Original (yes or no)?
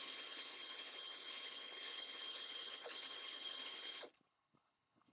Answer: no